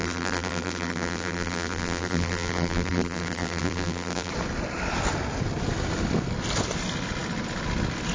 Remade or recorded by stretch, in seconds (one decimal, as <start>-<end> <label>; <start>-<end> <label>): 0.0-4.3 remade; 4.3-8.1 recorded